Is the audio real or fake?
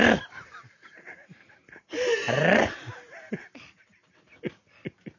real